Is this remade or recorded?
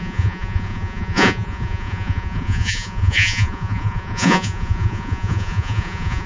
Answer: remade